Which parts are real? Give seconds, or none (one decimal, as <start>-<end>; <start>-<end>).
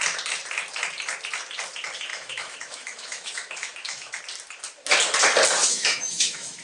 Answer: 0.0-2.1; 4.2-5.6